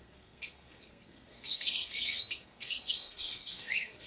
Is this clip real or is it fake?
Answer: fake